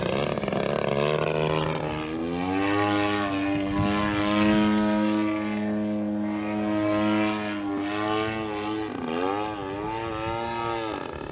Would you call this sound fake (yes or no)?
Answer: no